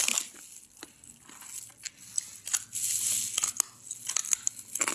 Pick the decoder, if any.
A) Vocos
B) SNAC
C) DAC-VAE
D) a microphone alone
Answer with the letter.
D